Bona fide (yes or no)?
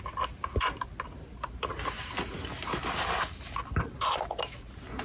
yes